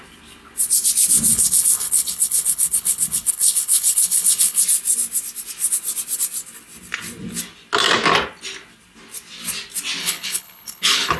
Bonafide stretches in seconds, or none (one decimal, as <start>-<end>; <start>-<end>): 0.0-1.3; 4.6-10.0